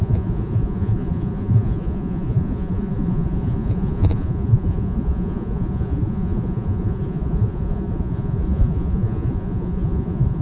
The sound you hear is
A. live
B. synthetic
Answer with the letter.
B